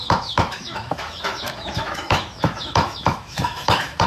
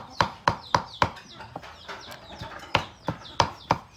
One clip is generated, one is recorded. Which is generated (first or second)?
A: first